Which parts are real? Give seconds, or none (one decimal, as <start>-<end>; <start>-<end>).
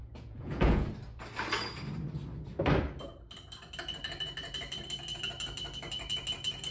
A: 0.9-6.7